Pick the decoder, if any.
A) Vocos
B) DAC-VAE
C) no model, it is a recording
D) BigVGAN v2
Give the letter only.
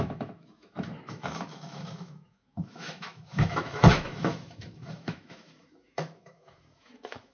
B